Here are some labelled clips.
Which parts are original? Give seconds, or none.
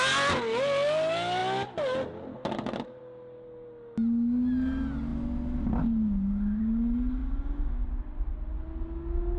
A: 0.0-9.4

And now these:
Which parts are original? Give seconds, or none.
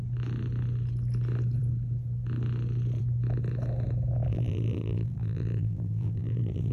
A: 0.0-4.3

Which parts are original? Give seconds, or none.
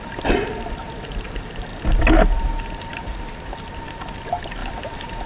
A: 1.7-2.6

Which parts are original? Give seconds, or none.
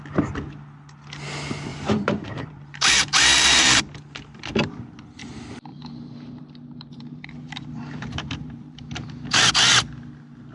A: 0.0-1.7; 3.8-5.7; 9.5-10.5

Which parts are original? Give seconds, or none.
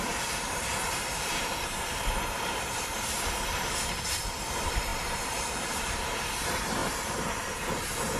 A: none